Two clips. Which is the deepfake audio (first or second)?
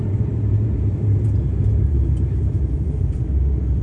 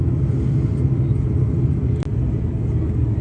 first